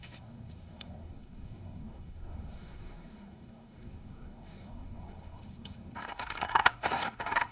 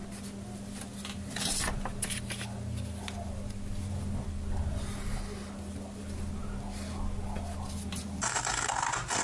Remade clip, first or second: first